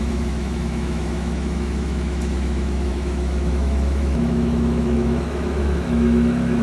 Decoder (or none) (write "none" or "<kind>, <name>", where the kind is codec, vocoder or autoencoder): autoencoder, DAC-VAE